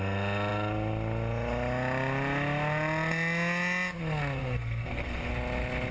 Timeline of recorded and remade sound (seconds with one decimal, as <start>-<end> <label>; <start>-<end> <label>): 0.0-4.4 recorded; 4.4-5.3 remade; 5.3-5.9 recorded